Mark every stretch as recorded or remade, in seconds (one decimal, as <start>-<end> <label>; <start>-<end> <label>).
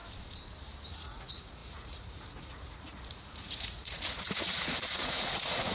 0.0-0.9 recorded; 0.9-5.7 remade